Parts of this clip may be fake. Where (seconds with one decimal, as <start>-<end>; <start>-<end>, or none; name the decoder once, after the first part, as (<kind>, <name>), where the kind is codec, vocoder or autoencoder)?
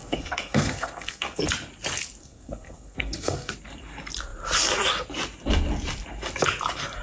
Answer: 0.0-1.4 (codec, SNAC); 2.2-3.5